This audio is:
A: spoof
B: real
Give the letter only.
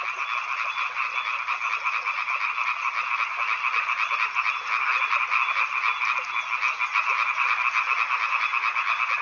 B